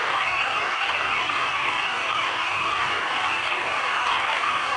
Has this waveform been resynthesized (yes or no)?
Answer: yes